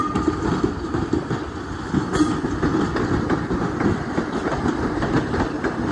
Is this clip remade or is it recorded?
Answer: recorded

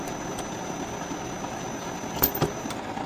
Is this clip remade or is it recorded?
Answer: recorded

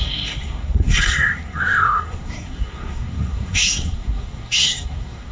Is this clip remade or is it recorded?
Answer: remade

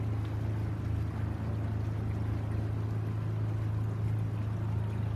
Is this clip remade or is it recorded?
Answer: recorded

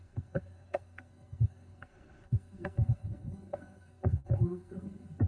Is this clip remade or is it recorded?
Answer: remade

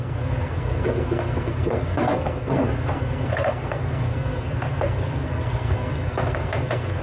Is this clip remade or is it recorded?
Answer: remade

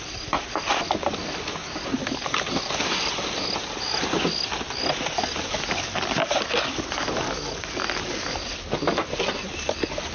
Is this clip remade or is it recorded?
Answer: recorded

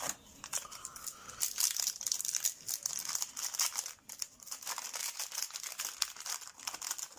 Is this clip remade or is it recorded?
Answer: recorded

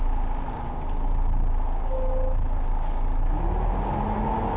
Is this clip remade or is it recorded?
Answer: recorded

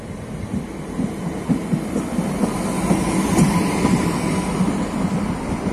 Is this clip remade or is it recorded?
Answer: recorded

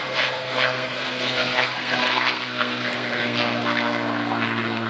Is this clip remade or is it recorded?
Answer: remade